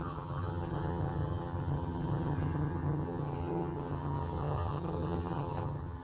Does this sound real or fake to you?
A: fake